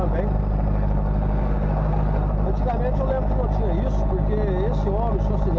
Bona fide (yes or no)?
yes